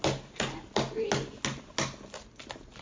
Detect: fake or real real